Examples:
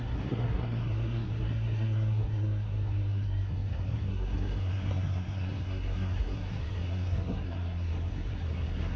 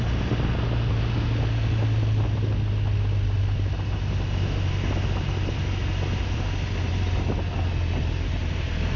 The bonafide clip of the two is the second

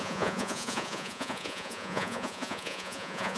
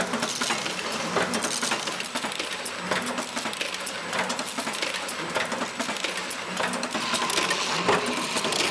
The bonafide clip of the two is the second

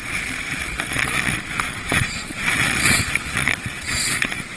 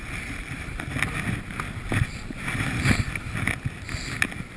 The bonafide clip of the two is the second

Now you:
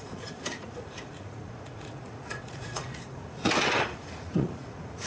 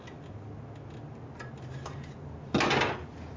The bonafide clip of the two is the second